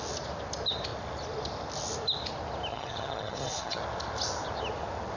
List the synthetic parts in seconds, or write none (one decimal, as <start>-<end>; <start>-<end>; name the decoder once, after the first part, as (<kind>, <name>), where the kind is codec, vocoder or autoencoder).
2.7-3.8 (vocoder, HiFi-GAN)